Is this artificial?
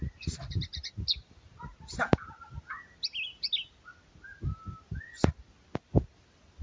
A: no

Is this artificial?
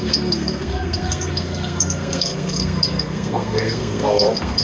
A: yes